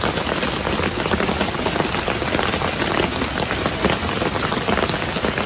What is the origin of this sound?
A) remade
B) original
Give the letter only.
B